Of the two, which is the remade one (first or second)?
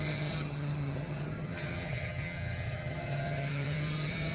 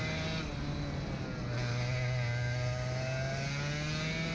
first